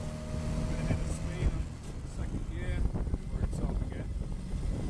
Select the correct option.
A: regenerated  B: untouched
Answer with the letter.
B